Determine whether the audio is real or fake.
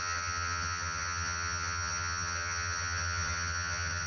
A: fake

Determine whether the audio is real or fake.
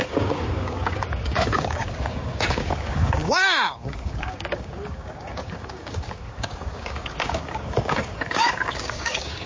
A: fake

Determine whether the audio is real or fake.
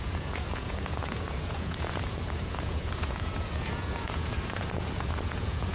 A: fake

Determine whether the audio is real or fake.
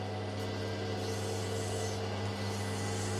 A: real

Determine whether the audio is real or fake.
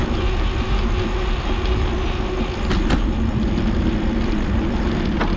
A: real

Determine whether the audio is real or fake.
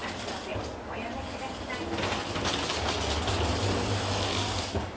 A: real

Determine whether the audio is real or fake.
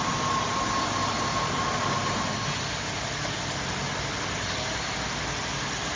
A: real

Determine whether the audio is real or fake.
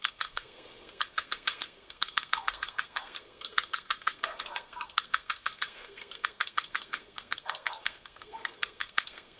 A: fake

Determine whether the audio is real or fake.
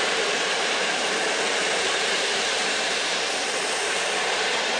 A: fake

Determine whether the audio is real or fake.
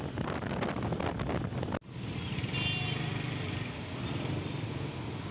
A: real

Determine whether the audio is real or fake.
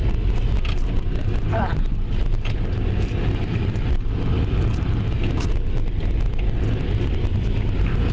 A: real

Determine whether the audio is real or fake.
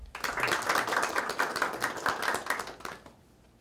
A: real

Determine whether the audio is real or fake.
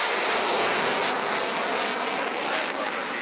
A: real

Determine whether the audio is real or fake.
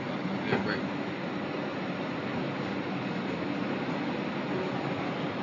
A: real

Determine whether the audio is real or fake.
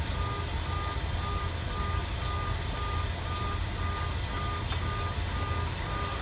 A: real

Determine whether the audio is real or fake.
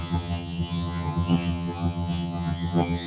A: fake